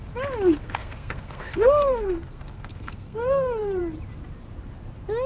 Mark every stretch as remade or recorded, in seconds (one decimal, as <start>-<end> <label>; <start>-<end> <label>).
0.0-0.6 recorded; 0.6-3.8 remade; 3.8-5.3 recorded